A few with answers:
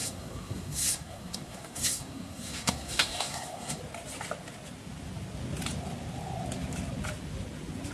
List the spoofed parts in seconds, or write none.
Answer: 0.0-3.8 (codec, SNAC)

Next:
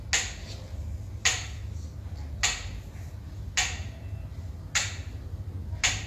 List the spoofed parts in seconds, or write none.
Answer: none

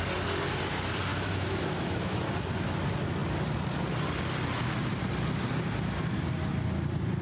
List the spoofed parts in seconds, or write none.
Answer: 1.1-2.2 (autoencoder, DAC-VAE)

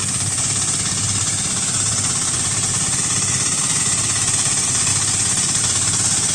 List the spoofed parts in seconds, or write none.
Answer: 0.0-4.9 (vocoder, BigVGAN v2); 5.6-6.3

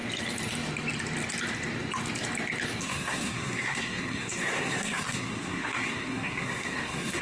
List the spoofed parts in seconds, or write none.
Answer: 2.8-7.2 (codec, SNAC)